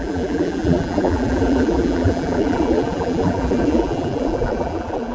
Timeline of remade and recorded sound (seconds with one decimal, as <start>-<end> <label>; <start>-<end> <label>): 0.0-5.1 remade